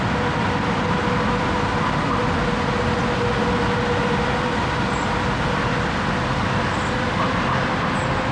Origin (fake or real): real